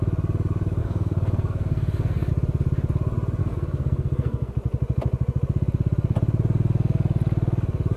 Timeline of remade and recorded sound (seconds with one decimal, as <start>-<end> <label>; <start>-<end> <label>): 0.0-0.8 recorded; 0.8-2.3 remade; 2.3-3.4 recorded; 3.4-4.5 remade; 4.5-8.0 recorded